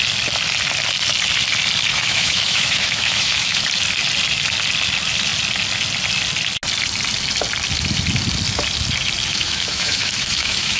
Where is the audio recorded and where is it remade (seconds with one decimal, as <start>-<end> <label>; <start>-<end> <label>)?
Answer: 0.0-1.9 recorded; 1.9-3.6 remade; 3.6-9.3 recorded; 9.3-10.8 remade

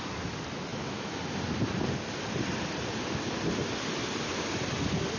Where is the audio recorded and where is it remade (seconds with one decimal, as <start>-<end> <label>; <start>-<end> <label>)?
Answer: 0.0-0.7 recorded; 0.7-1.2 remade; 1.2-5.2 recorded

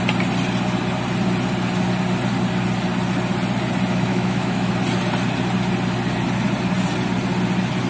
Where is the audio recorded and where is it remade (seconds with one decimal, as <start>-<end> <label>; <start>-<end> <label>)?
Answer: 0.0-4.1 recorded; 4.1-4.7 remade; 4.7-7.9 recorded

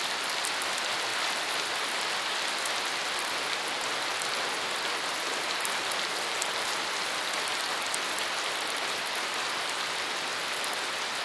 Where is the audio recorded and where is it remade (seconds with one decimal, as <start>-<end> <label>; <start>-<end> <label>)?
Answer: 0.0-11.2 recorded